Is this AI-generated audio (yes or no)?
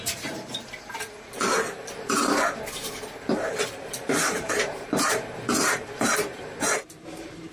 yes